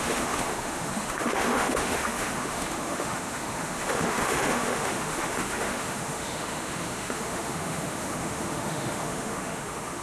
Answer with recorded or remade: remade